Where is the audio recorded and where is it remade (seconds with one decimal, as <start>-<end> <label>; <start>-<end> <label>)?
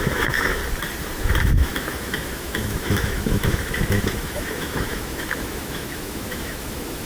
0.0-0.6 remade; 0.6-1.2 recorded; 1.2-7.1 remade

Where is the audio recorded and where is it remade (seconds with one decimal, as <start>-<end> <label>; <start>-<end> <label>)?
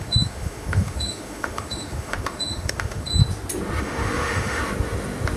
0.0-3.1 remade; 3.1-3.8 recorded; 3.8-4.6 remade; 4.6-5.4 recorded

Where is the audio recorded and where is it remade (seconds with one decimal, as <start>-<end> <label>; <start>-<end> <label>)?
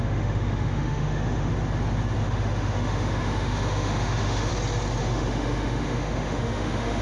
0.0-1.5 remade; 1.5-2.2 recorded; 2.2-4.5 remade; 4.5-5.0 recorded; 5.0-7.0 remade